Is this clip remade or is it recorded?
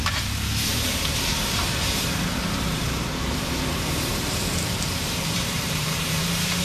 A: remade